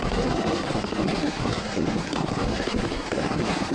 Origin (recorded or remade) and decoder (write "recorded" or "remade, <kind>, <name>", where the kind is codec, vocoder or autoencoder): remade, codec, SNAC